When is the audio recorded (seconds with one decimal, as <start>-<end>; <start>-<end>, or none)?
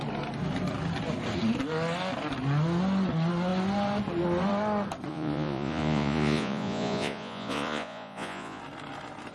0.0-5.1; 8.6-9.3